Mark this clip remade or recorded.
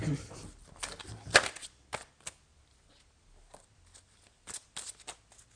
recorded